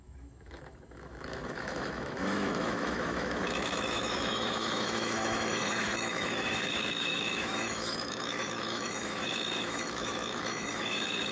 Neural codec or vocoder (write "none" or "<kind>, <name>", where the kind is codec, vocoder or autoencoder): autoencoder, DAC-VAE